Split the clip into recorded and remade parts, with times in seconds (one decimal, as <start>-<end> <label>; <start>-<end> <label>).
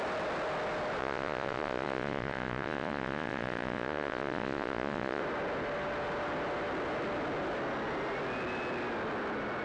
0.0-1.0 recorded; 1.0-5.2 remade; 5.2-9.6 recorded